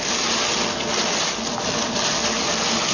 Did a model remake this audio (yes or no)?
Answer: no